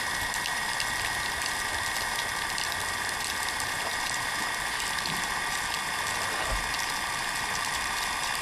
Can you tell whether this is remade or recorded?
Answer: remade